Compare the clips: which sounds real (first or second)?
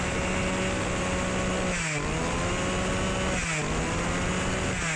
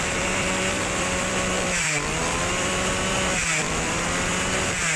first